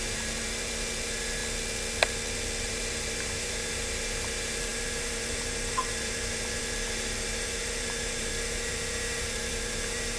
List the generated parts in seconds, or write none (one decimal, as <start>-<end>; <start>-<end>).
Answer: 0.0-1.4; 2.6-10.2